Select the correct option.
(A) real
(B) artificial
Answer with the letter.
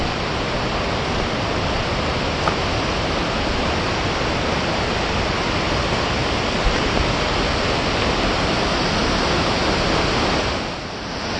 A